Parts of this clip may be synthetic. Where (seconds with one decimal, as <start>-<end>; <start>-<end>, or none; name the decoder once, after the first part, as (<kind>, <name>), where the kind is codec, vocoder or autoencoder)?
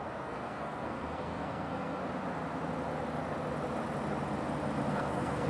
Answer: 0.0-2.0 (codec, SNAC); 4.9-5.5